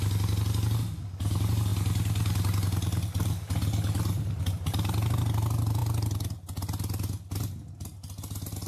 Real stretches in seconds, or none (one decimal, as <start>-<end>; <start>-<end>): 0.0-8.7